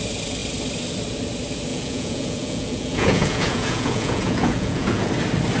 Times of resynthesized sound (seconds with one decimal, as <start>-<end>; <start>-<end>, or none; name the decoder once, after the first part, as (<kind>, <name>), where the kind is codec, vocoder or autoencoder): 1.7-5.1 (vocoder, Vocos)